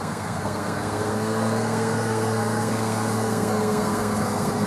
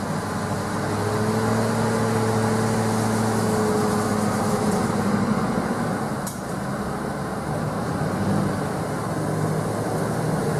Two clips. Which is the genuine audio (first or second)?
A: second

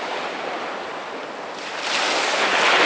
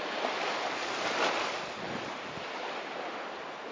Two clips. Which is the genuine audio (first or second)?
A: first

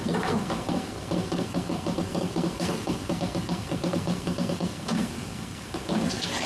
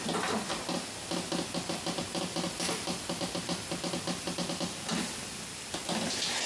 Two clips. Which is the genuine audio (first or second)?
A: second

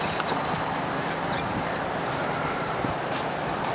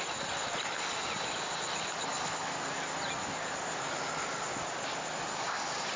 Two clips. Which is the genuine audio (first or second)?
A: second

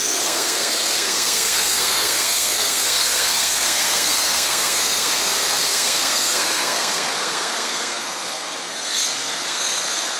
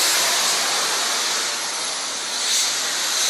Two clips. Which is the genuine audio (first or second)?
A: second